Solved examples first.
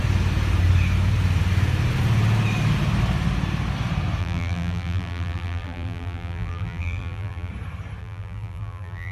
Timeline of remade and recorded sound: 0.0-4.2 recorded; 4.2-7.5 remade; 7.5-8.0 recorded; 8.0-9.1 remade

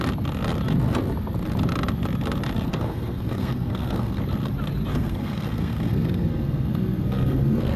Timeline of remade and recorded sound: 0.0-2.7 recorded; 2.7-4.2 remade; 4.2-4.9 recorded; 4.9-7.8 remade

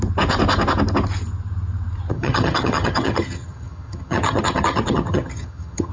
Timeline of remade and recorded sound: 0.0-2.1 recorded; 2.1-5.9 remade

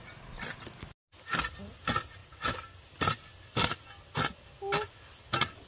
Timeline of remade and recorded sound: 0.0-5.7 recorded

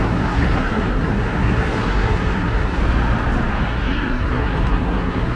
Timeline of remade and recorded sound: 0.0-2.8 remade; 2.8-3.6 recorded; 3.6-5.4 remade